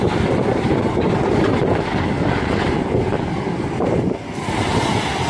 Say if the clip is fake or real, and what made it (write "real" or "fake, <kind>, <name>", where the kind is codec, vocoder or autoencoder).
real